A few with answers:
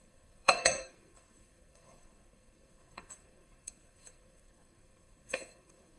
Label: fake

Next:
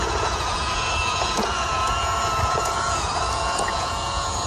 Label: fake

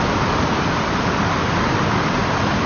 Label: real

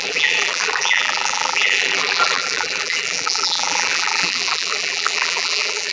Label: fake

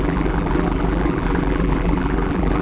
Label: fake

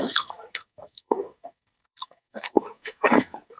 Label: fake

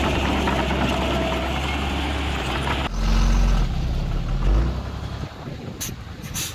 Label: real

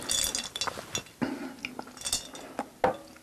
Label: real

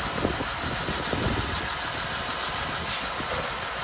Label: real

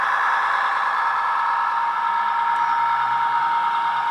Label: real